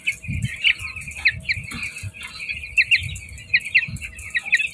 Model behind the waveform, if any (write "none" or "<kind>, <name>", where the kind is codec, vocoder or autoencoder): none